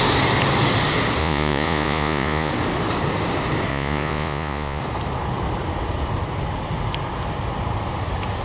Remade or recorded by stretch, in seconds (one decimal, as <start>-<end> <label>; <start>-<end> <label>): 0.0-1.2 recorded; 1.2-2.5 remade; 2.5-3.7 recorded; 3.7-4.8 remade; 4.8-8.4 recorded